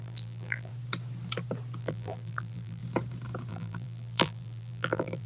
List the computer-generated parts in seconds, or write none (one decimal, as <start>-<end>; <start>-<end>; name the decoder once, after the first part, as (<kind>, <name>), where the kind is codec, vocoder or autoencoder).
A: 0.0-0.7 (vocoder, BigVGAN v2); 1.8-2.8; 3.5-5.3